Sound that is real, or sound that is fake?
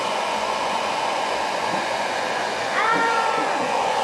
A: fake